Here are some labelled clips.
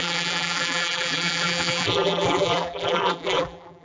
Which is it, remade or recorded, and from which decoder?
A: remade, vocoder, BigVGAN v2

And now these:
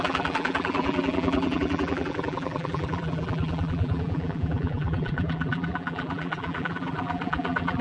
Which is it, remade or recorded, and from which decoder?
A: remade, vocoder, BigVGAN v2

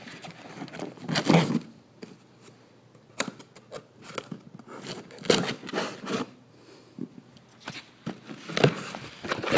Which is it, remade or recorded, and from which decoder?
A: recorded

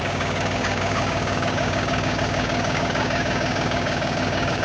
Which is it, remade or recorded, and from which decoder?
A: remade, codec, DAC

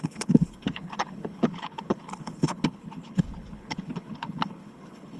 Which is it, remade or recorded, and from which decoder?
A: remade, codec, HILCodec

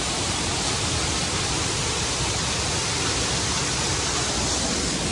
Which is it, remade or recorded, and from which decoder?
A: recorded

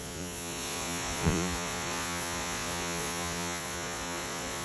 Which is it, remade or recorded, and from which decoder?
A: remade, vocoder, Vocos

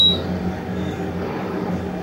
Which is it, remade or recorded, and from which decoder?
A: remade, codec, DAC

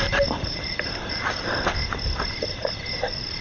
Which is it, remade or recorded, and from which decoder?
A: recorded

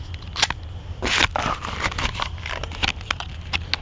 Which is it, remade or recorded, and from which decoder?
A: recorded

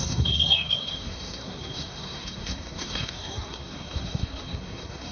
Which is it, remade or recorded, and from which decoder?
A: remade, codec, SNAC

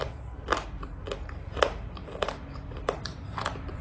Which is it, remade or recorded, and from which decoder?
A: remade, vocoder, BigVGAN v2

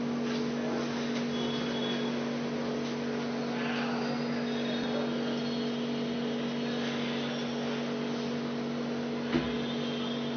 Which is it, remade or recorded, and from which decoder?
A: recorded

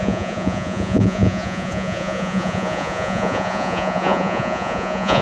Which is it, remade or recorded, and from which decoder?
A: remade, vocoder, Vocos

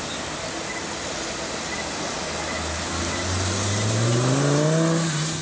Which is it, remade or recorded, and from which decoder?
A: recorded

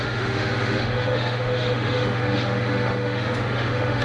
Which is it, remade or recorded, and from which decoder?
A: remade, autoencoder, DAC-VAE